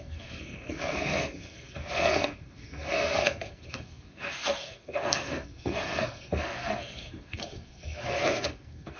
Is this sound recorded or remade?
remade